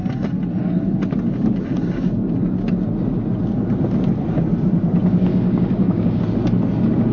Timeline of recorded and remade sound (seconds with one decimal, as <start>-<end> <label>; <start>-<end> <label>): 0.0-5.3 recorded; 5.3-6.2 remade; 6.2-7.1 recorded

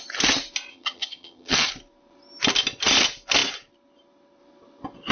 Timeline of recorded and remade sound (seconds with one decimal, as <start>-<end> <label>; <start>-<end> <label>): 0.0-0.7 recorded; 0.7-1.7 remade; 1.7-5.1 recorded

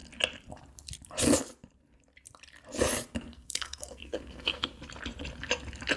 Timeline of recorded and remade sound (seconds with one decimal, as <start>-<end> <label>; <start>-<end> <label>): 0.0-3.3 recorded; 3.3-4.8 remade; 4.8-6.0 recorded

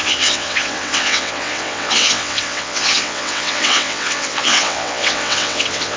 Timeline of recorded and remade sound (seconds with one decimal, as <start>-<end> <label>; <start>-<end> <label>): 0.0-6.0 remade